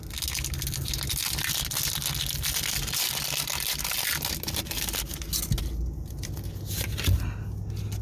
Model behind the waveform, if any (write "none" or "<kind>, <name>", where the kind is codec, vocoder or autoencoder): none